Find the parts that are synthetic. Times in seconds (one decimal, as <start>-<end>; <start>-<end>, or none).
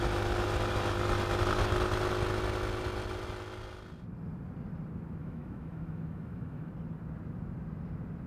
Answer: 5.2-6.7